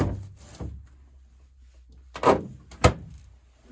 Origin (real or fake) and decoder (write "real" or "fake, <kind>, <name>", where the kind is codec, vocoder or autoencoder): real